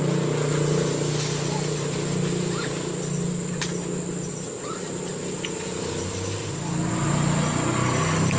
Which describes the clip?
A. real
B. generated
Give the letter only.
A